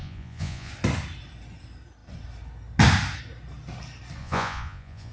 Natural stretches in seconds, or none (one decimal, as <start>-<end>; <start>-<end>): 0.7-4.2